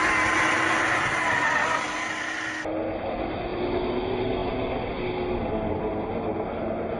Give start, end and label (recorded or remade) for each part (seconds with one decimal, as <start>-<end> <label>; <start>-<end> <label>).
0.0-7.0 recorded